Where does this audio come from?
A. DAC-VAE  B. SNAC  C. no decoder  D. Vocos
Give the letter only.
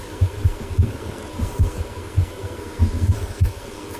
B